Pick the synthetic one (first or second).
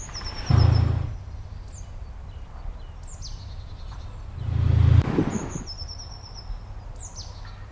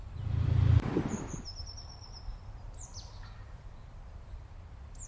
second